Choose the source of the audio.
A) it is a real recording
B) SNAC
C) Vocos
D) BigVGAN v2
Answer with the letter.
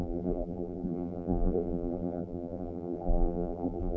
D